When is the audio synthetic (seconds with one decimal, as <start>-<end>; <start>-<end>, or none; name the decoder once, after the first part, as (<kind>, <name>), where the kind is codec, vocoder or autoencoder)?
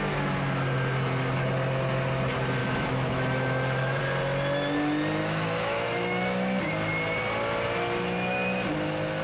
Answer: 2.6-4.0 (autoencoder, DAC-VAE); 5.2-6.6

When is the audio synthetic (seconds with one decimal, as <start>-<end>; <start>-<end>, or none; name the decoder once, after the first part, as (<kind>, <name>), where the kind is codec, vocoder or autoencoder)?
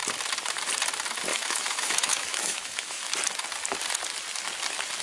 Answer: 1.3-3.1 (autoencoder, DAC-VAE)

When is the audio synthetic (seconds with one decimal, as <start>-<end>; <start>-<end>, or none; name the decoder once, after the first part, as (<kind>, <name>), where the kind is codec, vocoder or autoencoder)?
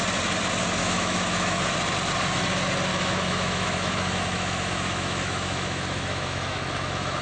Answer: 0.8-1.6 (autoencoder, DAC-VAE); 2.9-7.2